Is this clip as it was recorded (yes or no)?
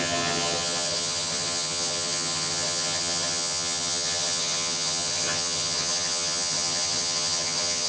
no